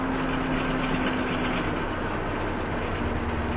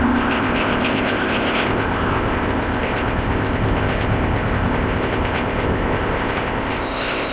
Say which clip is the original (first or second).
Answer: first